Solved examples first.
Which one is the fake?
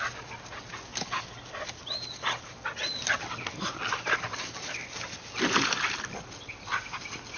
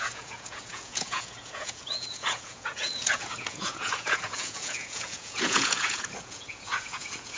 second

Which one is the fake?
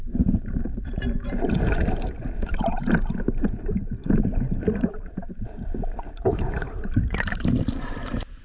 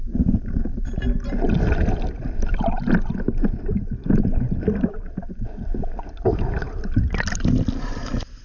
first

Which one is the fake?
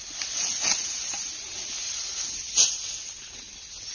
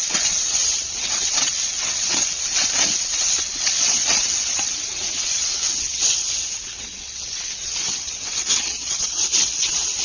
second